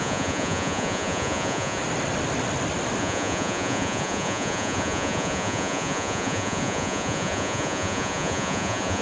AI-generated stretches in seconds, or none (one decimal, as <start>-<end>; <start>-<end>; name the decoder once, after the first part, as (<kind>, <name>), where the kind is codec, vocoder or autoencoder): 0.0-1.8 (vocoder, Vocos); 3.0-9.0